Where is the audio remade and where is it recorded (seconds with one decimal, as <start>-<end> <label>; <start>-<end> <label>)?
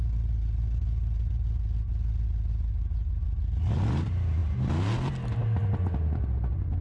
0.0-6.8 recorded